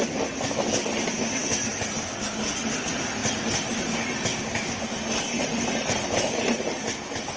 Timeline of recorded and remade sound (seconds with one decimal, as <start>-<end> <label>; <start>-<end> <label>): 0.0-4.3 recorded; 4.3-4.8 remade; 4.8-7.4 recorded